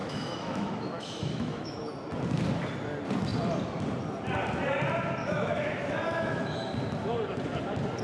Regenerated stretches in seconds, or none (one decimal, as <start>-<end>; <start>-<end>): 0.0-1.9; 5.2-6.7